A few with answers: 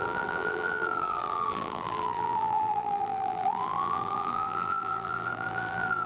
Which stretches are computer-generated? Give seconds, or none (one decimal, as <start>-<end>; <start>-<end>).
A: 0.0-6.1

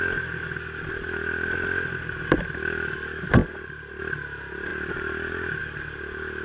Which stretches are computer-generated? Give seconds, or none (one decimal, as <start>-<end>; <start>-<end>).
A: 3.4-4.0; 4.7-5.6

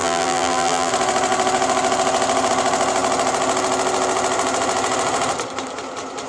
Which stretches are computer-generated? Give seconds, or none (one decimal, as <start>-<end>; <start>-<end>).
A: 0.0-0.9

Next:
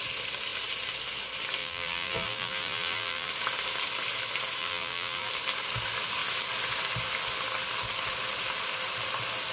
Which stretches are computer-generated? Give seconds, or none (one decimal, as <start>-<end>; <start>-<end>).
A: 1.6-3.3; 4.6-5.3

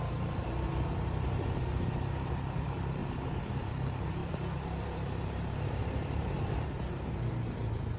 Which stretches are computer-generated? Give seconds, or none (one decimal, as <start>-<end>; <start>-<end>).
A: 0.0-3.0; 3.5-8.0

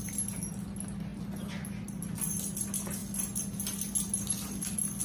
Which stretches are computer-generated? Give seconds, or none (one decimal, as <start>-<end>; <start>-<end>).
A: none

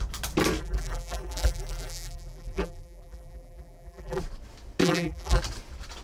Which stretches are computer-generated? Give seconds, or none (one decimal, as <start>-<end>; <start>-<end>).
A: 0.6-4.2; 4.8-5.4